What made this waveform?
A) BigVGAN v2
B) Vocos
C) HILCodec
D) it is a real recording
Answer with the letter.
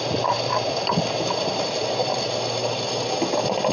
D